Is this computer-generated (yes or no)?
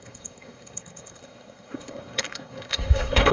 yes